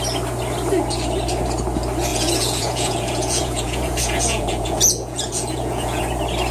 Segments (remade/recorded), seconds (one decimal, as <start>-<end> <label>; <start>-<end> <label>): 0.0-2.1 recorded; 2.1-6.0 remade; 6.0-6.5 recorded

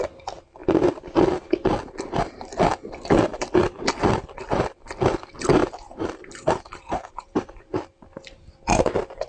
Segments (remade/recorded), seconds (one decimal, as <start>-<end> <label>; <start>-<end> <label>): 0.0-5.6 recorded; 5.6-7.7 remade; 7.7-9.3 recorded